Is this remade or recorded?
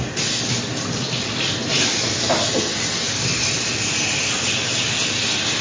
recorded